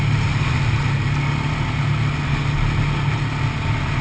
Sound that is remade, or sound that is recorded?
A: recorded